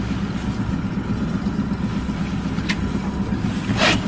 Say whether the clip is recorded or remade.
recorded